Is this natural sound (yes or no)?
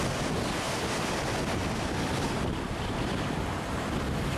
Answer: yes